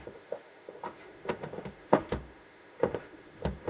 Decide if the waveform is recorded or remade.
remade